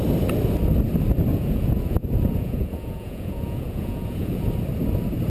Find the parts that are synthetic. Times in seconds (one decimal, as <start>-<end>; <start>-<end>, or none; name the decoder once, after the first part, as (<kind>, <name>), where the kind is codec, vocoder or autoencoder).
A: 1.3-4.5 (vocoder, Vocos)